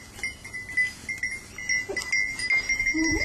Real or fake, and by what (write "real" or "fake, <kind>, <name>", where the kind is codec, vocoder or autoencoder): real